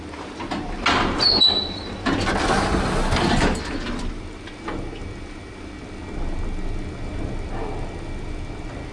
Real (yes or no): yes